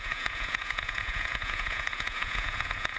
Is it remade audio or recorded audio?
remade